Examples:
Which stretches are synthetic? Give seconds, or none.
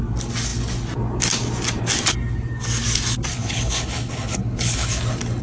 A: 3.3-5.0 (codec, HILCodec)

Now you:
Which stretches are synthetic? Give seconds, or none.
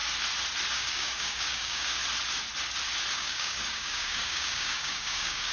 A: 0.7-2.0 (codec, DAC); 3.1-5.5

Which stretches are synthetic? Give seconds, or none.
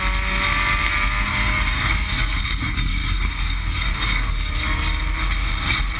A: 1.3-4.9 (codec, DAC)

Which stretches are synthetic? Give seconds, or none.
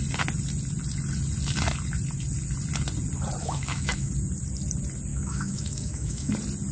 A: 3.4-4.1 (autoencoder, DAC-VAE); 5.1-6.3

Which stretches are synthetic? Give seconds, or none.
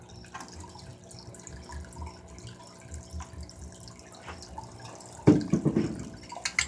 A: none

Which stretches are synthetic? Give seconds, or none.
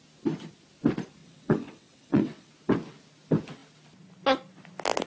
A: 1.2-2.5 (vocoder, WaveNeXt)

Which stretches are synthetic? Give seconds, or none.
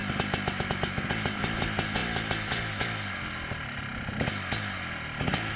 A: none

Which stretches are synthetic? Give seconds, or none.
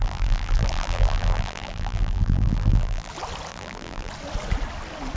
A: 0.0-3.1 (vocoder, BigVGAN v2); 3.5-4.1